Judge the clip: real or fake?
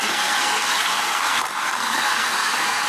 fake